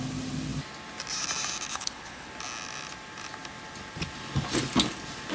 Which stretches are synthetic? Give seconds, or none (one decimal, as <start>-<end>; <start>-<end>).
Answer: 1.7-2.3